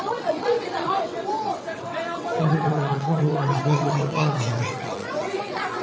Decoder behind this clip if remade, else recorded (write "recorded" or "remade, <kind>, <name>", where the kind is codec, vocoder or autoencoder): remade, vocoder, WaveNeXt